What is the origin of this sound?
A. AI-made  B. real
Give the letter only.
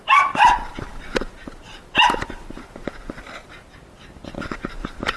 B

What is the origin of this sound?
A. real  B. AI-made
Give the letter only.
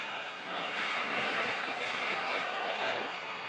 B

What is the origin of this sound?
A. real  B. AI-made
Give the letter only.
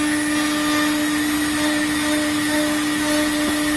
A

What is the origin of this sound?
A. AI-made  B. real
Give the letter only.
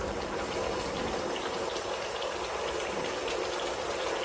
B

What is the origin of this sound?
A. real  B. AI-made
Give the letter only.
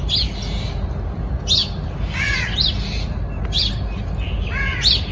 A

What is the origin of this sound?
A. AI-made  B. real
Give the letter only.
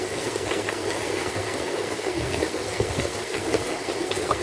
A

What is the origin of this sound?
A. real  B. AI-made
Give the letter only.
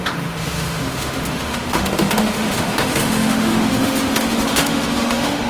B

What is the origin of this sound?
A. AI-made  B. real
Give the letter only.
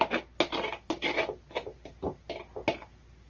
B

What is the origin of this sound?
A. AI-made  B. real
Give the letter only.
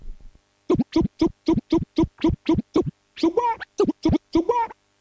B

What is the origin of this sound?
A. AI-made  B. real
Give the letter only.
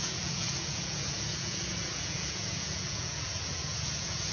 A